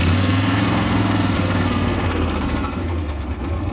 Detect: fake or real fake